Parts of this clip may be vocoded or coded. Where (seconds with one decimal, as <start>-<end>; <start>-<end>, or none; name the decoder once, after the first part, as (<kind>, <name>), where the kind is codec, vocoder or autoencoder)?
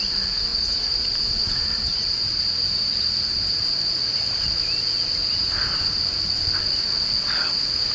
0.5-4.4 (vocoder, BigVGAN v2); 5.2-5.9